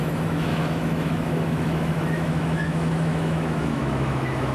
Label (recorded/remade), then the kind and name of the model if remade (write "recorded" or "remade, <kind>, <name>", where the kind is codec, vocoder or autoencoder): remade, autoencoder, DAC-VAE